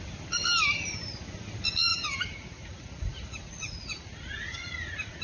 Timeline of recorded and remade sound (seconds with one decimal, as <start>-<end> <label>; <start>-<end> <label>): 0.0-1.9 recorded; 1.9-5.2 remade